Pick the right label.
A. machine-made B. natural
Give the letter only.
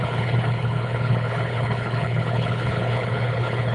A